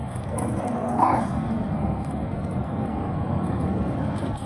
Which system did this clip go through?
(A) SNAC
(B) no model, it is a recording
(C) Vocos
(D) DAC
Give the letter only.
A